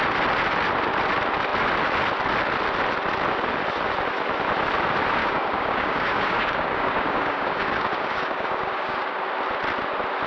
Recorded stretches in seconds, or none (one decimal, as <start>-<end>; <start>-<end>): 0.0-5.2; 9.2-10.3